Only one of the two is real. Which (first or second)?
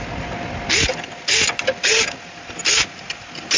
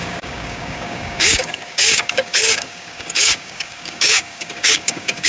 first